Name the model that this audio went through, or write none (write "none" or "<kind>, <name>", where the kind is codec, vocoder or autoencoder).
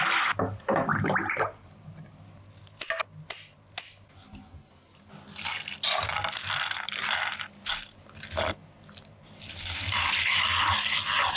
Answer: none